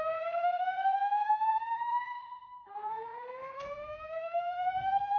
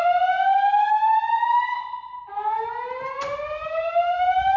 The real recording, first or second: second